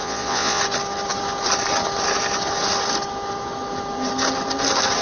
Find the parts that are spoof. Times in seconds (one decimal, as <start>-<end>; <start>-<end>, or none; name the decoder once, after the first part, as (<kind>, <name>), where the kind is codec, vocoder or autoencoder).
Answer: 0.0-0.6 (vocoder, Vocos)